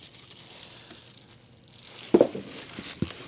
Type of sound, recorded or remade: recorded